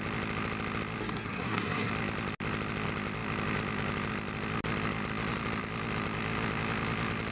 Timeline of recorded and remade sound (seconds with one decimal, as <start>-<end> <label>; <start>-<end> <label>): 0.0-1.0 recorded; 1.0-1.9 remade; 1.9-7.3 recorded